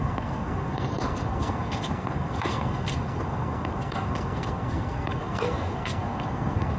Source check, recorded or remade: remade